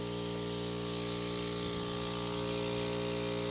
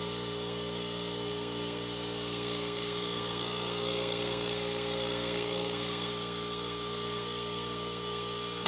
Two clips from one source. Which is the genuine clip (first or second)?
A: first